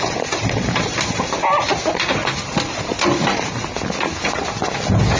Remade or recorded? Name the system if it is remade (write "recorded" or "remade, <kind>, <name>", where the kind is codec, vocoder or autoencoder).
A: recorded